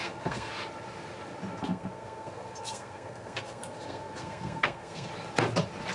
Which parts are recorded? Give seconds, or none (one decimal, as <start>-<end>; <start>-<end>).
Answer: 0.5-1.6; 5.1-5.9

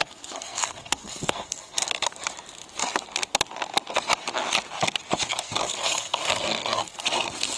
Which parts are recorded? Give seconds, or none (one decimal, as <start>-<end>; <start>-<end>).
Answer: 1.8-5.3

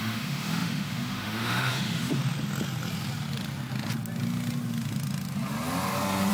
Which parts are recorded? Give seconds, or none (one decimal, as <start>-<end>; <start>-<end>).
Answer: 2.2-6.3

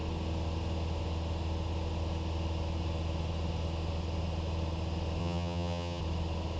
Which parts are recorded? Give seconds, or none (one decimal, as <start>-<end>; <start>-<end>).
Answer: 0.0-5.2; 6.0-6.6